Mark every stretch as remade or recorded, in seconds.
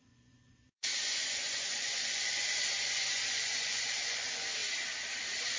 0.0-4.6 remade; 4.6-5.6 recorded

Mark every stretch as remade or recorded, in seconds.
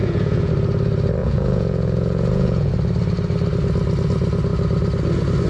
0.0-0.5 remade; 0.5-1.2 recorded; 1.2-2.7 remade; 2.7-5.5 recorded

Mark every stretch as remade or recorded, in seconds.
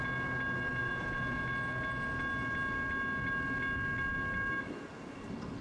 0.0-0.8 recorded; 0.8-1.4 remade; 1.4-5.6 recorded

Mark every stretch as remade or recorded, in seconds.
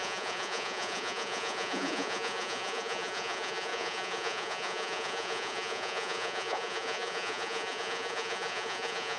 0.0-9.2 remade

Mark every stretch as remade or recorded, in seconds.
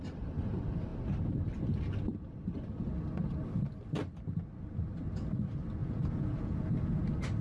0.0-5.8 recorded; 5.8-7.0 remade; 7.0-7.4 recorded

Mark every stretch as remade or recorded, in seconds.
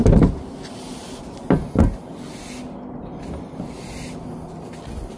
0.0-5.2 recorded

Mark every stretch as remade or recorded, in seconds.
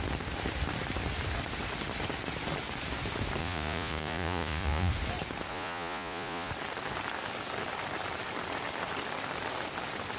0.0-3.4 recorded; 3.4-4.9 remade; 4.9-5.5 recorded; 5.5-6.5 remade; 6.5-10.2 recorded